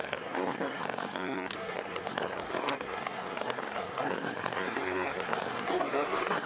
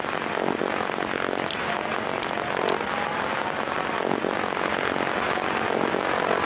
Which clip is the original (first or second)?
second